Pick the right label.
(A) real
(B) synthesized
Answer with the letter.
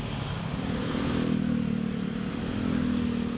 A